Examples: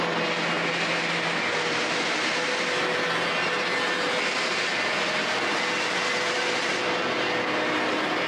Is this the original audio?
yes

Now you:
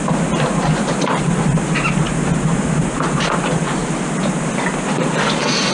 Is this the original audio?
yes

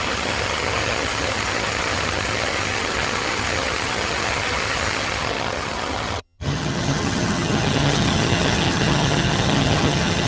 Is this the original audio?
no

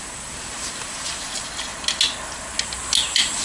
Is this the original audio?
yes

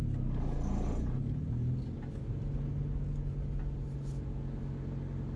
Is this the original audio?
yes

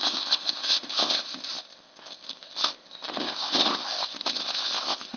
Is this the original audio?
no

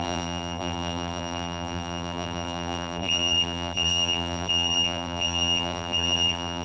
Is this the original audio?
no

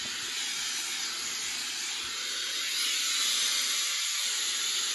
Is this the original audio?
yes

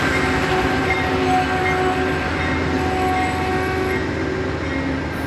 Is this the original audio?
yes